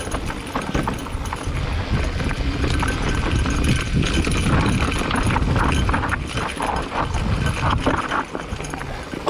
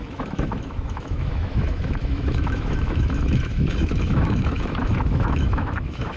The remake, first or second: second